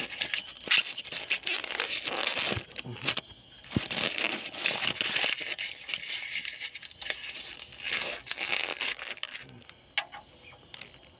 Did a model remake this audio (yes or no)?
no